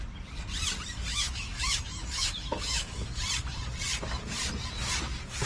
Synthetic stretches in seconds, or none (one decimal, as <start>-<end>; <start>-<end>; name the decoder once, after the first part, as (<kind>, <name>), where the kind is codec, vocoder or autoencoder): 1.1-3.2 (autoencoder, DAC-VAE)